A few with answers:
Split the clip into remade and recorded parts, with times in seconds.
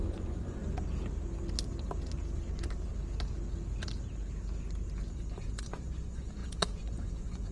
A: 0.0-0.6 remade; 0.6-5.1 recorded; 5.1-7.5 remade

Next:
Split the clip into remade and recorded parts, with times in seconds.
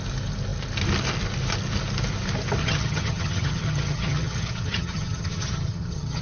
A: 0.0-2.6 recorded; 2.6-6.2 remade